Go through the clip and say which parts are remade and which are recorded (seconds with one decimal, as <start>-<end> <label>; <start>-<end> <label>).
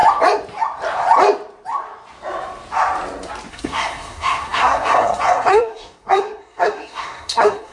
0.0-3.5 recorded; 3.5-7.7 remade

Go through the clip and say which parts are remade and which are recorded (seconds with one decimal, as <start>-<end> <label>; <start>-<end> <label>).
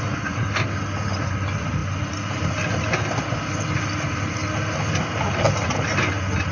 0.0-6.5 recorded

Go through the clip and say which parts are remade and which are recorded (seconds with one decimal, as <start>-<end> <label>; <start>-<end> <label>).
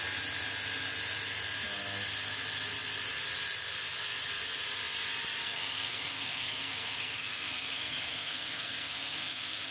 0.0-5.4 recorded; 5.4-9.7 remade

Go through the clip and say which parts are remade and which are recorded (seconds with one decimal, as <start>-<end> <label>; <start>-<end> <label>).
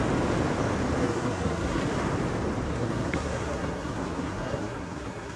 0.0-1.0 recorded; 1.0-1.8 remade; 1.8-2.7 recorded; 2.7-5.4 remade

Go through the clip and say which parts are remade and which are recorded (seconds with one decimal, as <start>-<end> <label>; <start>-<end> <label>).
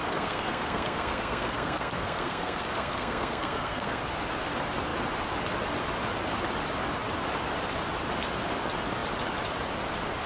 0.0-4.0 remade; 4.0-10.3 recorded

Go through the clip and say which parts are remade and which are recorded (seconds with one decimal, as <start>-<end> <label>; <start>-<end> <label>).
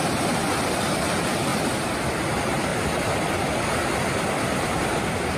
0.0-5.4 recorded